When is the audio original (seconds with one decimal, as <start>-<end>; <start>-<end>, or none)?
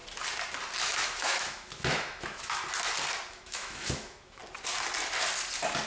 0.0-0.8; 2.6-3.3; 4.4-5.9